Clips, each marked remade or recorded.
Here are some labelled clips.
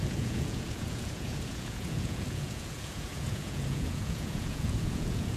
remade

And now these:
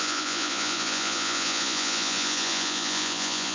remade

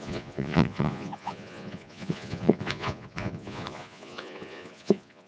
remade